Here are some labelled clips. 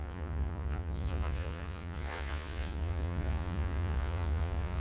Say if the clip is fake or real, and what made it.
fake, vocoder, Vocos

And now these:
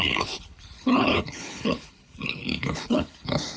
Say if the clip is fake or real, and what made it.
fake, codec, HILCodec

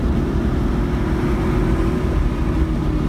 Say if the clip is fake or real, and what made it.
real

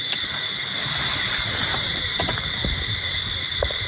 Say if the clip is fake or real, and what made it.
real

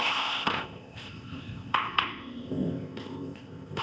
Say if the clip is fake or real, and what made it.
fake, codec, ZipCodec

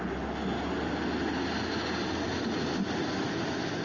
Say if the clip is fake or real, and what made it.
real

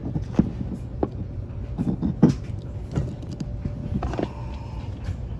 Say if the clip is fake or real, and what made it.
real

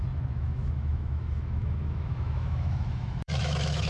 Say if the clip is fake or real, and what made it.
fake, autoencoder, DAC-VAE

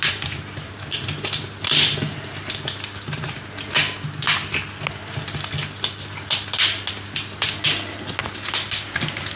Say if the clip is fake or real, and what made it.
real